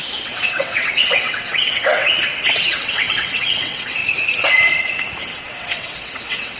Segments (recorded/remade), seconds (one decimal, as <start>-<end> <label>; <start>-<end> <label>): 0.0-4.0 remade; 4.0-5.2 recorded; 5.2-6.6 remade